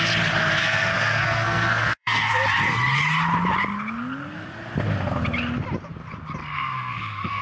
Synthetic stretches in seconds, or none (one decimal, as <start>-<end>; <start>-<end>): 0.6-2.3; 6.4-7.4